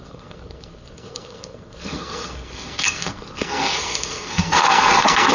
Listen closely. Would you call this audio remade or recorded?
remade